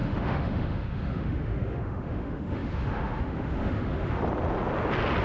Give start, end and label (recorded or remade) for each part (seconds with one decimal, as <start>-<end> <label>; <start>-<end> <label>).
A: 0.0-4.2 remade; 4.2-5.2 recorded